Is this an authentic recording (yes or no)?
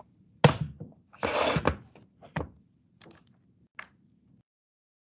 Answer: yes